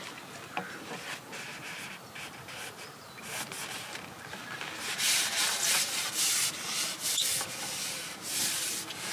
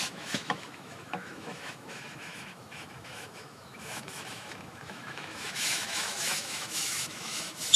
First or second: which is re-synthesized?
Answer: second